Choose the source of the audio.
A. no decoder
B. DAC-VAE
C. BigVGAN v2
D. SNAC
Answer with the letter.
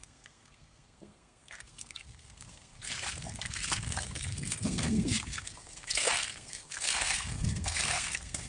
D